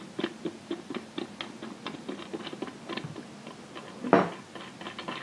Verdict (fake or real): real